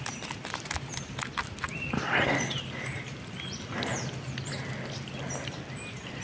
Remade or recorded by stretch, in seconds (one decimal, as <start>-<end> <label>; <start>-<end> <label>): 0.0-6.2 recorded